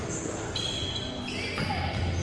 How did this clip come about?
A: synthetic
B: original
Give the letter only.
B